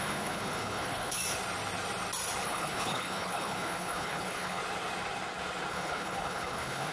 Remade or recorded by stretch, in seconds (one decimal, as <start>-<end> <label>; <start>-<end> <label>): 0.0-1.2 remade; 1.2-2.4 recorded; 2.4-4.6 remade; 4.6-5.7 recorded; 5.7-6.9 remade